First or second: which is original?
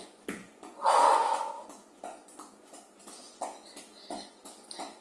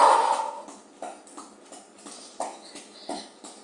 second